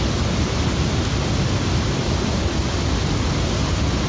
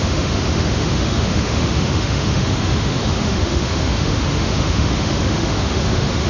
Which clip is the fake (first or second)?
second